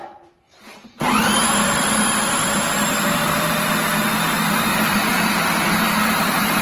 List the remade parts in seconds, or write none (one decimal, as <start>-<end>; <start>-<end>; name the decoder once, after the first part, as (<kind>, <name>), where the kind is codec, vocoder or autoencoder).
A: 0.0-3.5 (vocoder, BigVGAN v2); 4.7-5.8